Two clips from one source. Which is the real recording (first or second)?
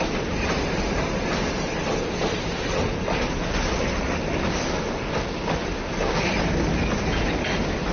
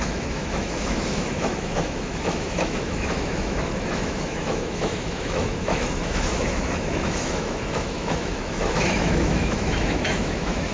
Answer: first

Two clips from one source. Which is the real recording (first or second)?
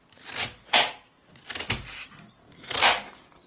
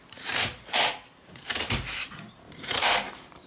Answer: first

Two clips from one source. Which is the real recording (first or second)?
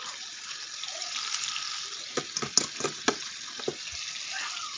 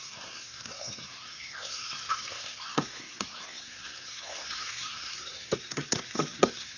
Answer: first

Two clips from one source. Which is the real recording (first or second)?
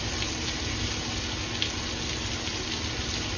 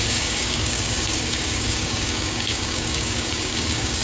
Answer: first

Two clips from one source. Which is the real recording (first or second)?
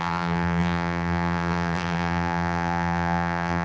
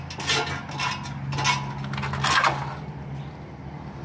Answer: second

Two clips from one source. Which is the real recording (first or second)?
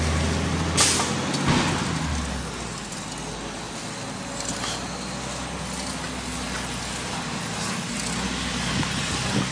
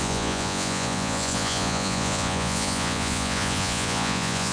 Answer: first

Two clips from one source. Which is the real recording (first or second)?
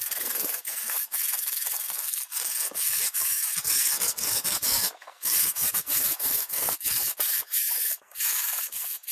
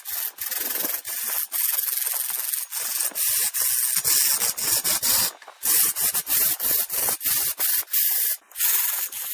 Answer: second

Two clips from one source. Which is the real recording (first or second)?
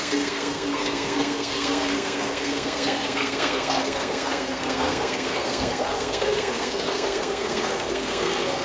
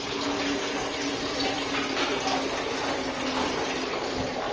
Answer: second